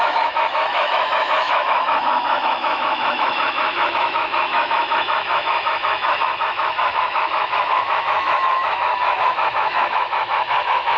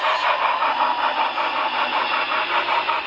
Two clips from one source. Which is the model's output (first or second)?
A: first